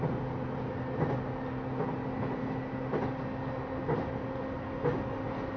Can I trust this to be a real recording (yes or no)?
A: yes